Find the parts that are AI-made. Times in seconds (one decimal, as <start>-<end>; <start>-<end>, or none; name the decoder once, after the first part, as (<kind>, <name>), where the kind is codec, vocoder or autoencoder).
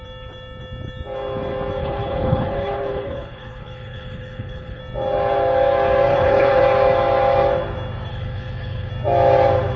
1.8-4.8 (codec, HILCodec); 6.1-6.6; 8.1-8.9